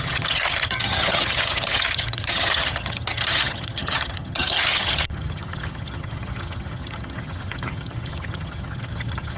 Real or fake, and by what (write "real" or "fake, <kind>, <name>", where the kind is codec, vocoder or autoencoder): fake, vocoder, HiFi-GAN